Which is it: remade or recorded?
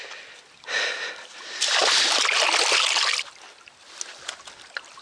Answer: recorded